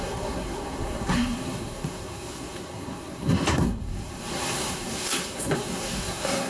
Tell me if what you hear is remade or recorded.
remade